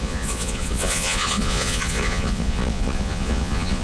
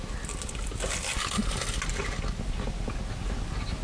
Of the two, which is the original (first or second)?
second